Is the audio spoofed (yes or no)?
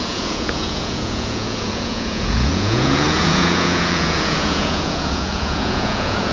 yes